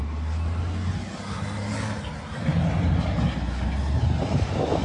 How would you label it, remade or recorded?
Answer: recorded